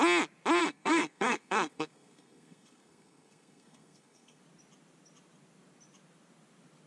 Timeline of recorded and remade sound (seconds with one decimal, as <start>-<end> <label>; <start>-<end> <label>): 0.0-0.6 recorded; 0.6-4.4 remade; 4.4-6.9 recorded